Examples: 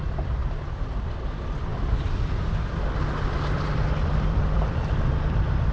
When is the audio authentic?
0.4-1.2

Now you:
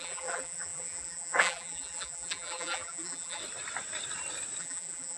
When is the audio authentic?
3.4-4.6

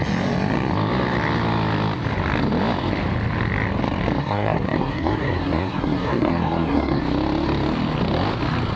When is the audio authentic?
0.0-4.2; 7.0-8.8

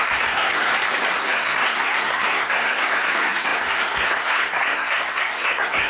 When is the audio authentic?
0.7-1.2

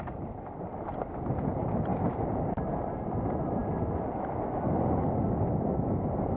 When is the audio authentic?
1.9-2.4

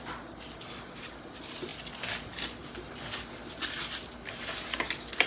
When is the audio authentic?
0.0-5.3

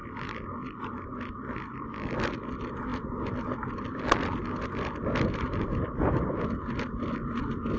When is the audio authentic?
0.0-7.8